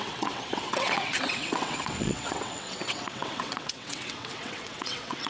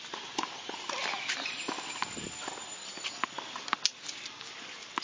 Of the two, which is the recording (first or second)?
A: second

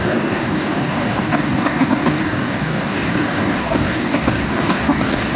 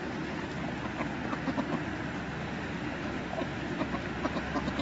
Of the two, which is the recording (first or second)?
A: second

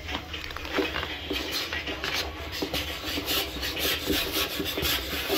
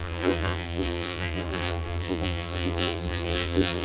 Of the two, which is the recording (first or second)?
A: first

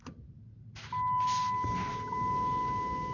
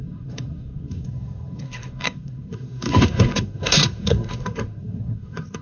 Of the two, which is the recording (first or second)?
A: first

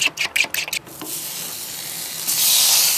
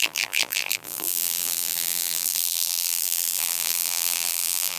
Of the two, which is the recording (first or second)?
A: first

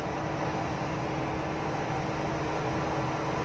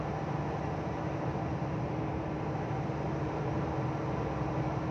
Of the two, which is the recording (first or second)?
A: first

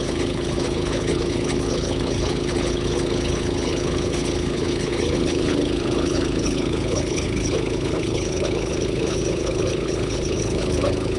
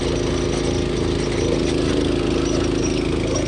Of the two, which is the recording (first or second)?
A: second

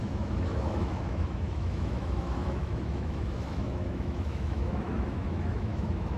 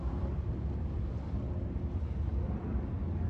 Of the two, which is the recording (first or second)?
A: second